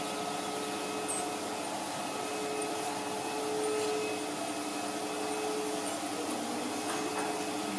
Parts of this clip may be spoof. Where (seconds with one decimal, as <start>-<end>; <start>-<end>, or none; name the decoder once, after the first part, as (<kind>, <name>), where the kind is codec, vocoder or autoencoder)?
2.6-3.4 (vocoder, BigVGAN v2)